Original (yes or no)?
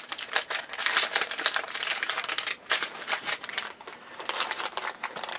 no